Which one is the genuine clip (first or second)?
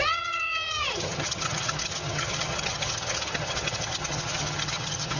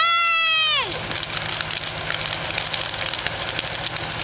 second